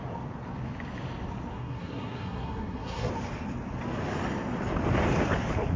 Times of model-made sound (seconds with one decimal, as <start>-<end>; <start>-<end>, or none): 1.5-3.1